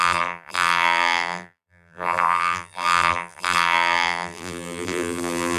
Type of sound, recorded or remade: remade